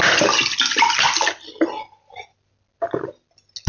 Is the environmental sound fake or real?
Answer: real